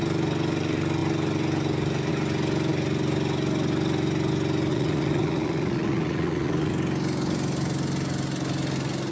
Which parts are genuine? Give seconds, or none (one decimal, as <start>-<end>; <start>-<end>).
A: 0.0-4.7; 6.7-9.1

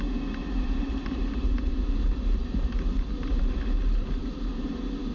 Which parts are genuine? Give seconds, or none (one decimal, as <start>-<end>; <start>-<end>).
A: 0.0-0.4; 3.5-5.1

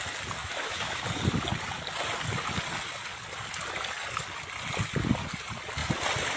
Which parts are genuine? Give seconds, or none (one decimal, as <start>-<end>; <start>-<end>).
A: 0.0-0.4; 1.0-6.4

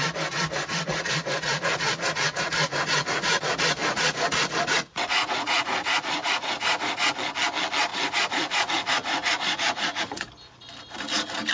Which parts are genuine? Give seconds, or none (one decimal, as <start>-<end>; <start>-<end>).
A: 0.0-0.9; 3.4-3.8; 7.1-7.9; 10.3-11.5

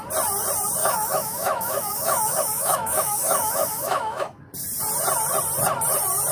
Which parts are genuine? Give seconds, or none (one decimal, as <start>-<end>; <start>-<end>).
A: 0.0-0.8; 4.4-6.3